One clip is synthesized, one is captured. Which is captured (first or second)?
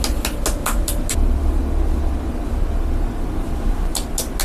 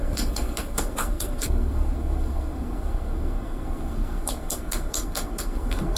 first